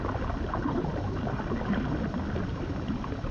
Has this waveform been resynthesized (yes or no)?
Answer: no